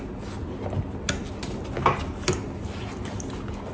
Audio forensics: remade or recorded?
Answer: recorded